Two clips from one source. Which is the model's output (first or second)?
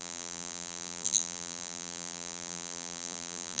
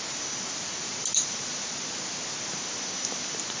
first